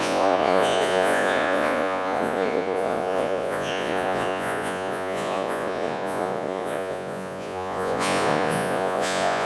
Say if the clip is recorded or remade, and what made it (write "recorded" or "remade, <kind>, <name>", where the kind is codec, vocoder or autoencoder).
remade, vocoder, Vocos